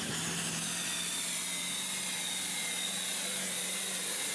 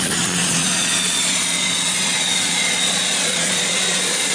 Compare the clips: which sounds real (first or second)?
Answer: first